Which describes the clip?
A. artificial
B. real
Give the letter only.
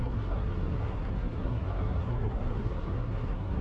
A